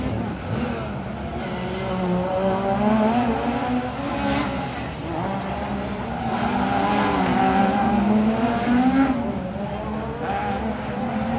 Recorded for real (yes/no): yes